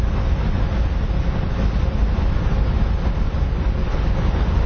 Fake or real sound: real